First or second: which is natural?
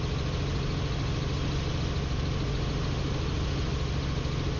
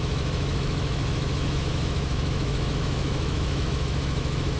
first